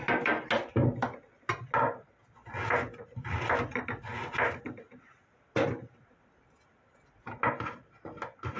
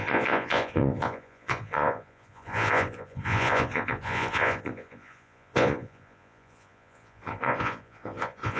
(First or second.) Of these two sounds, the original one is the first